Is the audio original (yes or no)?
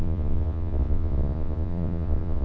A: no